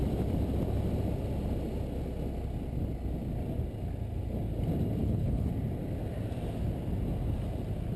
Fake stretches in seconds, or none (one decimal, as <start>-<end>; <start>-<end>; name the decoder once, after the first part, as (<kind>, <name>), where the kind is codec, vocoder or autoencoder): 5.0-5.5 (codec, HILCodec)